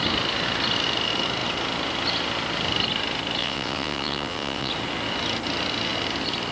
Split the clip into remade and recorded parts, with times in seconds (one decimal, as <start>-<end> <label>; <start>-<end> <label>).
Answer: 0.0-3.4 recorded; 3.4-4.7 remade; 4.7-6.5 recorded